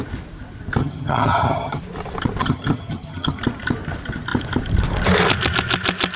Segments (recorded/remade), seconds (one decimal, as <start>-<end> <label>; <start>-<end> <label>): 0.0-0.8 recorded; 0.8-1.8 remade; 1.8-2.4 recorded; 2.4-3.4 remade; 3.4-6.2 recorded